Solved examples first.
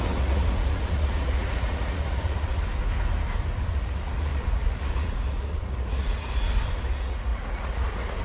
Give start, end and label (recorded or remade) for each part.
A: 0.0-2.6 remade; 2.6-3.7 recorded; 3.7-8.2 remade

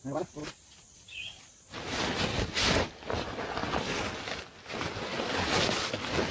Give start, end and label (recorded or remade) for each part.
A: 0.0-6.3 recorded

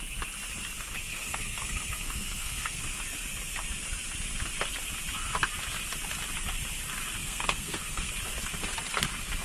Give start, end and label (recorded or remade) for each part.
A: 0.0-1.1 recorded; 1.1-2.8 remade; 2.8-7.2 recorded; 7.2-8.1 remade; 8.1-9.4 recorded